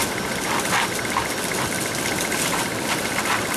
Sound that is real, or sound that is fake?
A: real